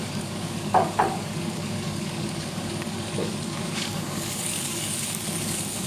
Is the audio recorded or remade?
remade